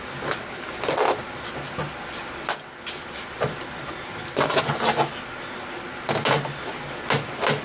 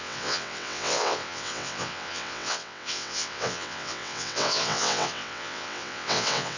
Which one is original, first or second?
first